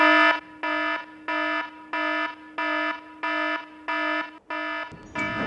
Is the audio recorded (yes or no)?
yes